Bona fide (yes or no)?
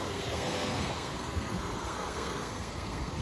no